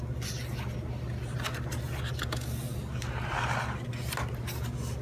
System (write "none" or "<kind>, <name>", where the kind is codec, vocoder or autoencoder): none